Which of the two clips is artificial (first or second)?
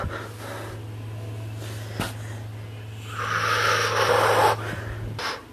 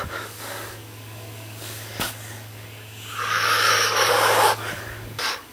second